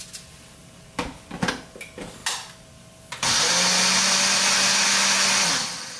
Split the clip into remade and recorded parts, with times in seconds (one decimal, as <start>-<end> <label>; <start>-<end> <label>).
0.0-6.0 recorded